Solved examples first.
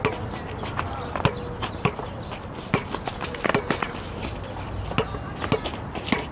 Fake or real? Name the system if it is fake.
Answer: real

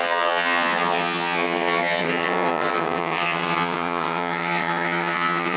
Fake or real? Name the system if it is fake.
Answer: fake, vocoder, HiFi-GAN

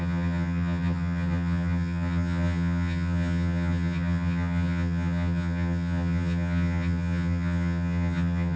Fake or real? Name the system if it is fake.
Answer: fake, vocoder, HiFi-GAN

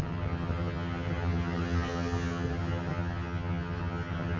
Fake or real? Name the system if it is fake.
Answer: fake, vocoder, HiFi-GAN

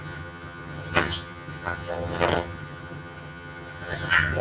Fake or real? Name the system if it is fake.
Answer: fake, vocoder, HiFi-GAN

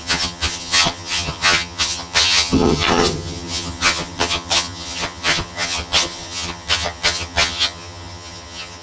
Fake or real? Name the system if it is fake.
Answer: fake, vocoder, HiFi-GAN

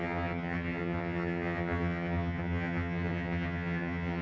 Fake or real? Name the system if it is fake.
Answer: fake, vocoder, HiFi-GAN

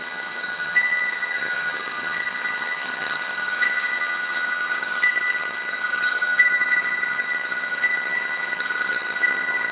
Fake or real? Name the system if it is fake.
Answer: fake, vocoder, HiFi-GAN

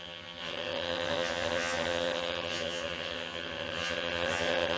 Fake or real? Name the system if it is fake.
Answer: fake, vocoder, HiFi-GAN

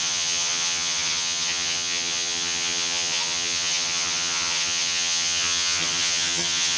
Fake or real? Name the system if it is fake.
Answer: fake, vocoder, HiFi-GAN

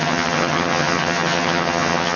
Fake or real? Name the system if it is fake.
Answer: fake, vocoder, HiFi-GAN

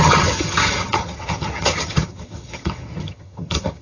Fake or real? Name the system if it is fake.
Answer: fake, vocoder, HiFi-GAN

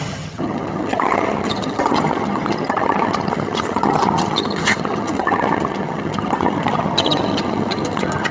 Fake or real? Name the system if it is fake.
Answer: fake, vocoder, HiFi-GAN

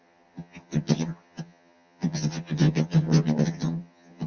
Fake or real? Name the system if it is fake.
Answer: fake, vocoder, HiFi-GAN